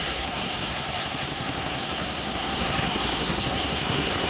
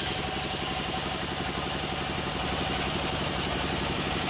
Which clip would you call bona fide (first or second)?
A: second